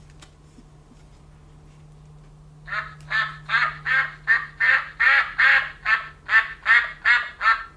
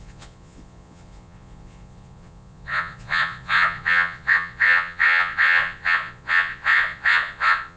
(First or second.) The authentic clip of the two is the first